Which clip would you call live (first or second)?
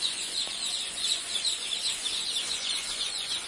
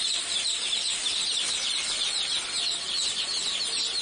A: second